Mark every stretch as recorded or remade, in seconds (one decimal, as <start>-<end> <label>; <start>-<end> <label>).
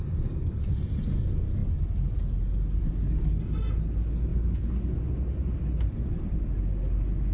0.0-7.3 recorded